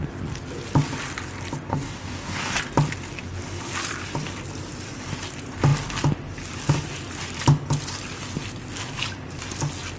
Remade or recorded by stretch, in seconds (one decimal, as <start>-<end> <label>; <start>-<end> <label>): 0.0-1.7 recorded; 1.7-2.6 remade; 2.6-10.0 recorded